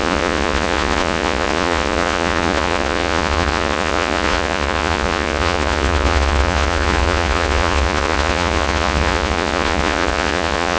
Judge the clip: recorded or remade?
remade